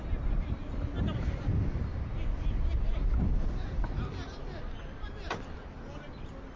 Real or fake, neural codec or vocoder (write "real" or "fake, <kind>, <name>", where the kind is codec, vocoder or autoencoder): real